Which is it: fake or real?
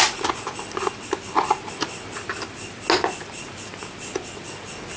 real